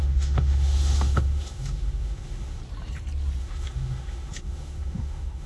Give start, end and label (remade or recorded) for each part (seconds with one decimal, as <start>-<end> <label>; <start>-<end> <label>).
0.0-2.6 remade; 2.6-3.4 recorded; 3.4-5.5 remade

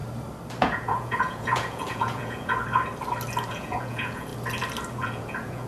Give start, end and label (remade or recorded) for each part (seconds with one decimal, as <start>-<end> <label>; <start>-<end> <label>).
0.0-0.6 recorded; 0.6-2.6 remade; 2.6-3.5 recorded; 3.5-4.3 remade; 4.3-4.9 recorded; 4.9-5.7 remade